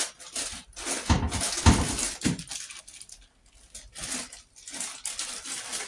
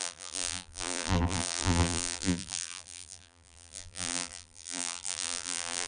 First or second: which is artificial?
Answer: second